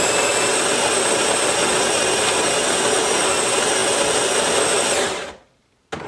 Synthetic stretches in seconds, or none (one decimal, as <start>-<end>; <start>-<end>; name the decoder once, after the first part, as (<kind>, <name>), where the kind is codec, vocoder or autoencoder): none